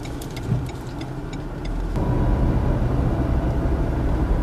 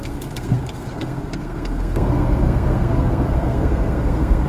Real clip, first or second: first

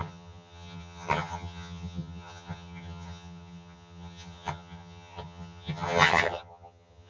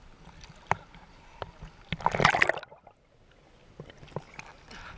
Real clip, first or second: second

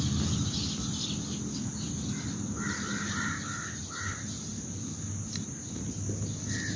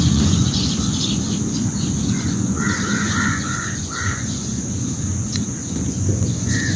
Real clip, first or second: first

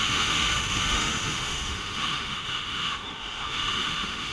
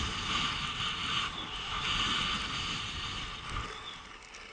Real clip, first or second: second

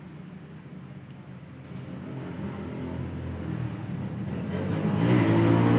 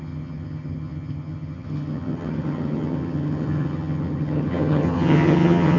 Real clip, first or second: first